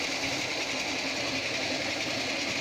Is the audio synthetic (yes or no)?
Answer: no